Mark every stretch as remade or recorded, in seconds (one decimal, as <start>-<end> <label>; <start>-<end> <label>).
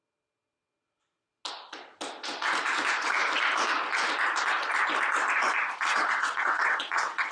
0.0-5.9 recorded; 5.9-7.3 remade